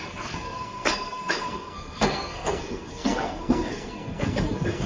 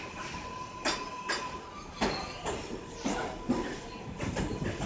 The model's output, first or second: first